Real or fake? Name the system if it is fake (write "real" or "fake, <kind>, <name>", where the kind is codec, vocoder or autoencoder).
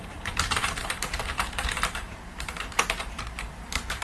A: fake, vocoder, BigVGAN v2